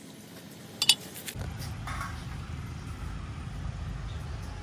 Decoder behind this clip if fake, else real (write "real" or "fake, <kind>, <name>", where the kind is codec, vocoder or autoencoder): real